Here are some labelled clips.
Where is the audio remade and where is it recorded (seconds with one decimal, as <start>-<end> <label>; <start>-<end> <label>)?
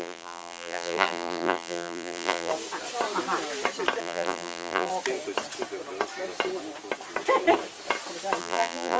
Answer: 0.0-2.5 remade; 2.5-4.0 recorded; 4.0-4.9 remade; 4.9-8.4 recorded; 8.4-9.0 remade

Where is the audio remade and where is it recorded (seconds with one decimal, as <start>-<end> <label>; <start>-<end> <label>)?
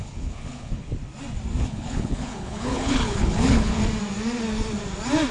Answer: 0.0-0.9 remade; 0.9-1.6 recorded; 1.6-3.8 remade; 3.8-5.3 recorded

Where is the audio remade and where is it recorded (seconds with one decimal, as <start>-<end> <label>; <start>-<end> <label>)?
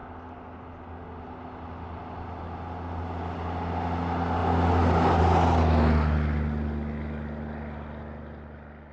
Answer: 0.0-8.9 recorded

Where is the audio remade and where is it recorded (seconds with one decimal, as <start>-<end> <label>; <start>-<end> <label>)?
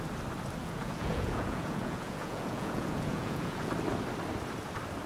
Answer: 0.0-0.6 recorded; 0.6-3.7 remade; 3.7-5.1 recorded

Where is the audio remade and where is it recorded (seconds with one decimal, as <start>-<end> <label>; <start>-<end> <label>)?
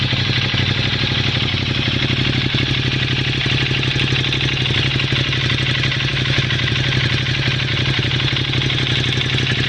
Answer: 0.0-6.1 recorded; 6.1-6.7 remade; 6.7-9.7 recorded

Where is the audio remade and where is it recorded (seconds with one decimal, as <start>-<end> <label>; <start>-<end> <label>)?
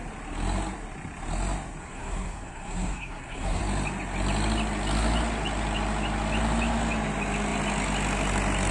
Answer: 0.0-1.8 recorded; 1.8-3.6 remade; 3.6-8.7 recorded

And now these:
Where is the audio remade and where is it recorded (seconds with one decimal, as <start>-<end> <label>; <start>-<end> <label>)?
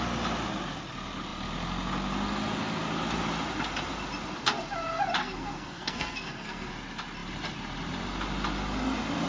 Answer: 0.0-5.2 recorded; 5.2-6.7 remade; 6.7-9.3 recorded